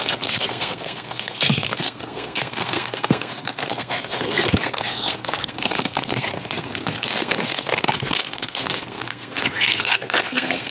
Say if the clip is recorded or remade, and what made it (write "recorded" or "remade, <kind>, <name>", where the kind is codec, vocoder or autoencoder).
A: remade, codec, SNAC